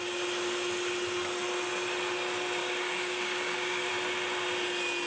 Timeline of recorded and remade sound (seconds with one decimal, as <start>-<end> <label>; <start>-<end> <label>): 0.0-2.6 recorded; 2.6-3.9 remade; 3.9-5.1 recorded